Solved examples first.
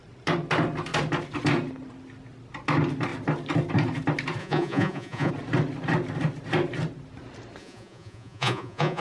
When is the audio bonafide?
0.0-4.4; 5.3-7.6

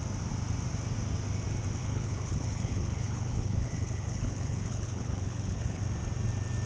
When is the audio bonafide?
0.0-1.8; 5.8-6.7

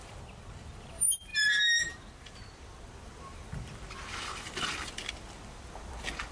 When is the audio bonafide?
none

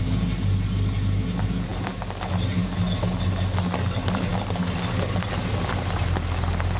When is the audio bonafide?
0.0-6.8

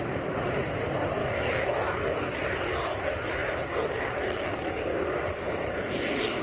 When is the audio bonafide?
0.0-1.2; 2.1-6.4